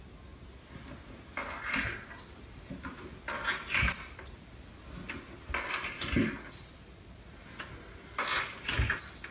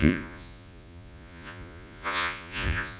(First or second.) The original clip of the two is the first